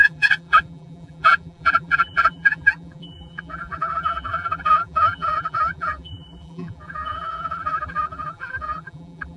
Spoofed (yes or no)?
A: yes